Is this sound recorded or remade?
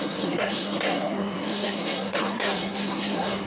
remade